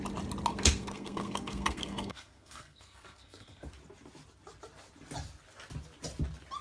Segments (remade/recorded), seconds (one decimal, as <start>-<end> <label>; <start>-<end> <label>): 0.0-0.5 recorded; 0.5-3.7 remade; 3.7-6.6 recorded